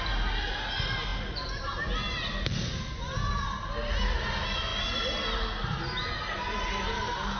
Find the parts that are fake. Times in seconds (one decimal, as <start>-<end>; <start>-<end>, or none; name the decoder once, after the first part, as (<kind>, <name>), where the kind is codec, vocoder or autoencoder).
none